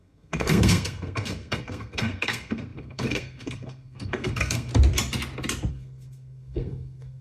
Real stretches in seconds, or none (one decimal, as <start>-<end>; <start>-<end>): 4.7-5.7